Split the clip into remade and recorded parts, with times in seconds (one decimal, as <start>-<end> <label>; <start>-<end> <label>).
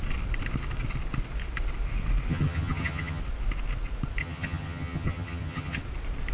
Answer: 0.0-2.3 recorded; 2.3-3.2 remade; 3.2-4.2 recorded; 4.2-5.8 remade; 5.8-6.3 recorded